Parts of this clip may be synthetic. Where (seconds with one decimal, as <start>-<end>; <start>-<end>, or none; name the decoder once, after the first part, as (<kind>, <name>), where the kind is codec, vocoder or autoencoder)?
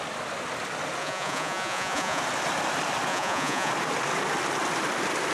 1.0-2.2 (vocoder, Vocos); 3.1-3.7